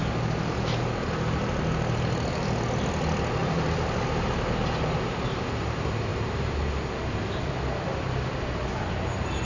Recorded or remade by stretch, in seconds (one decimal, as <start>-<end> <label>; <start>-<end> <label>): 0.0-3.4 recorded; 3.4-4.2 remade; 4.2-6.1 recorded; 6.1-6.7 remade; 6.7-9.4 recorded